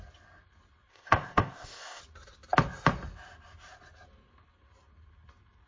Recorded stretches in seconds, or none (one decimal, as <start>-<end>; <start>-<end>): 0.0-0.9; 2.0-5.7